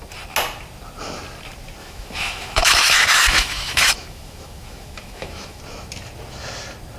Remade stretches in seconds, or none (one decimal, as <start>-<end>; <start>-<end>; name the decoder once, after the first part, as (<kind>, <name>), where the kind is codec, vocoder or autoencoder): 1.8-5.6 (autoencoder, DAC-VAE)

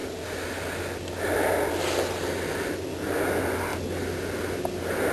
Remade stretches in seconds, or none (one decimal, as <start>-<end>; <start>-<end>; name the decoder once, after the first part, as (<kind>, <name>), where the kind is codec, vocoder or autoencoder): none